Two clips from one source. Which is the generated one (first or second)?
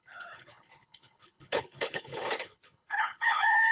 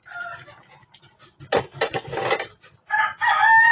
first